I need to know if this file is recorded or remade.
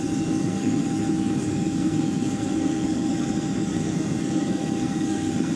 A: remade